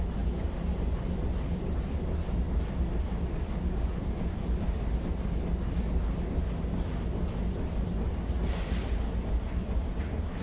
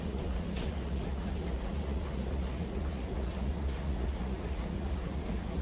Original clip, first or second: first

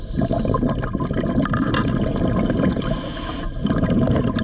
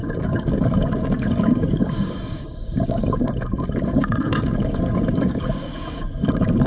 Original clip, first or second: first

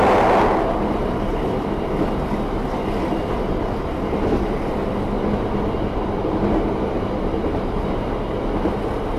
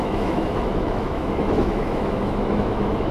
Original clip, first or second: first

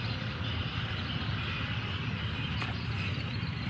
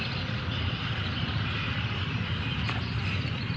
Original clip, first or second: first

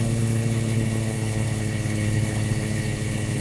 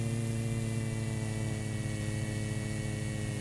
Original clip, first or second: second